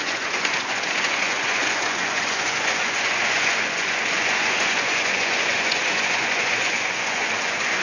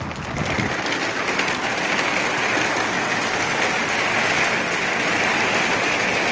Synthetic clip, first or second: first